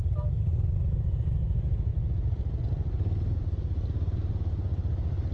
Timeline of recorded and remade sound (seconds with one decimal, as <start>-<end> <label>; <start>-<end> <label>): 0.0-5.3 recorded